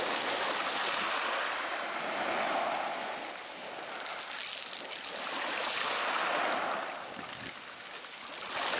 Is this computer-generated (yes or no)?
no